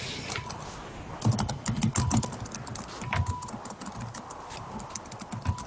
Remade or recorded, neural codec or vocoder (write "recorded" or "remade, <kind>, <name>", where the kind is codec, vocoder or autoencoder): recorded